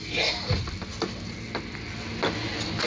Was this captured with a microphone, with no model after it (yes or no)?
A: yes